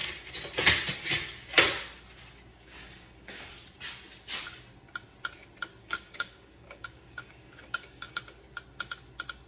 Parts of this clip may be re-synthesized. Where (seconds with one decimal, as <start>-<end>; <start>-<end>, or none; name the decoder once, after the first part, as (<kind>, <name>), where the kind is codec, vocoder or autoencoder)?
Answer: 2.5-3.4 (codec, DAC); 5.8-8.2